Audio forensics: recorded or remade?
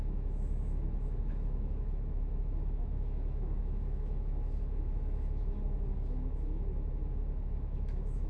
remade